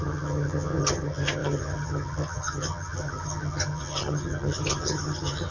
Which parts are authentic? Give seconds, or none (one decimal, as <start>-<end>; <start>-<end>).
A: none